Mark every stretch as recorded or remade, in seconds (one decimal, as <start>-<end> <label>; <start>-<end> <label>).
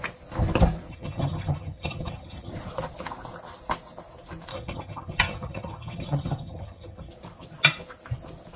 0.0-0.9 recorded; 0.9-2.5 remade; 2.5-4.5 recorded; 4.5-7.1 remade; 7.1-8.6 recorded